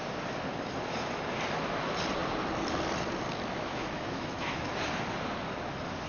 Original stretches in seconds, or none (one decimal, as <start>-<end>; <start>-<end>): 0.0-3.5; 4.7-6.1